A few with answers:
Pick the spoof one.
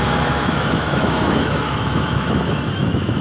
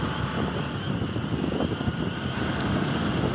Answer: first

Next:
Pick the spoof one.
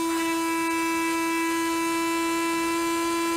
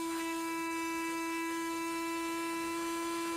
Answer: second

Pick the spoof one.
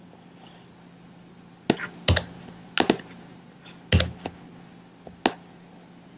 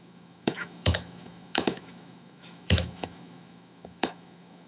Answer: second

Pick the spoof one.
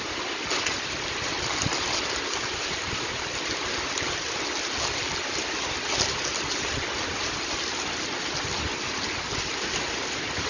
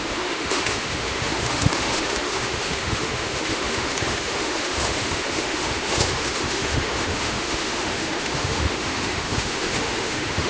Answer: second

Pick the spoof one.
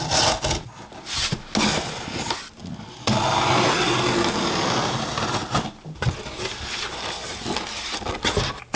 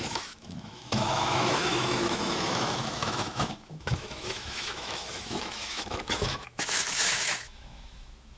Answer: second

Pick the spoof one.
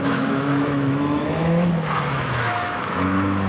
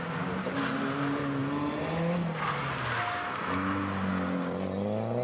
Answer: first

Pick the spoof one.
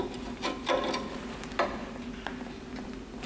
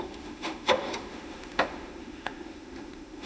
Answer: second